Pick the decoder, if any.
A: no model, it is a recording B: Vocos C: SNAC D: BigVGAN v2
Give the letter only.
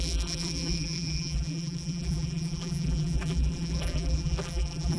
D